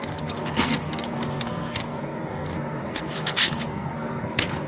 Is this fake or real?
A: fake